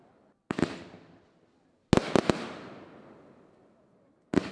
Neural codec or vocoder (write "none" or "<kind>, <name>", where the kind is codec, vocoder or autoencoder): none